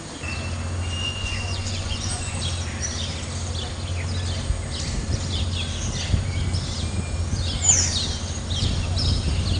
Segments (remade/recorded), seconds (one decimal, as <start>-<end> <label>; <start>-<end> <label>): 0.0-1.0 recorded; 1.0-2.4 remade; 2.4-9.6 recorded

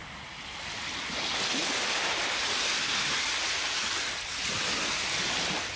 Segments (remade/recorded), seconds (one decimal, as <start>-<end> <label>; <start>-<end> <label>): 0.0-1.0 remade; 1.0-1.6 recorded; 1.6-4.7 remade; 4.7-5.8 recorded

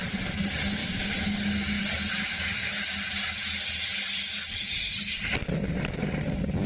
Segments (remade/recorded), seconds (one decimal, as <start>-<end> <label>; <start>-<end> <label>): 0.0-0.8 recorded; 0.8-1.8 remade; 1.8-2.2 recorded; 2.2-2.8 remade; 2.8-6.7 recorded

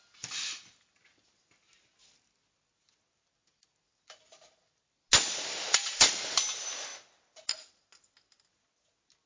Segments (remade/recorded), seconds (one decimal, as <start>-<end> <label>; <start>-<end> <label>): 0.0-9.3 recorded